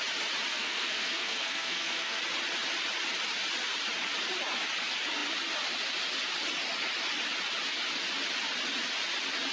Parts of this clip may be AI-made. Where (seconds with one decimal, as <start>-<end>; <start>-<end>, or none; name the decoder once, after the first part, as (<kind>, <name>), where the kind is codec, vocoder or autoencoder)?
0.5-2.2 (codec, SNAC)